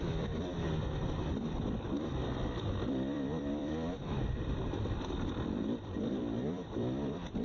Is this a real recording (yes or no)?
no